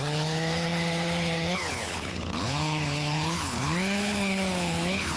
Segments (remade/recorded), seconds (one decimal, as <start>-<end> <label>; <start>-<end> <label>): 0.0-5.2 remade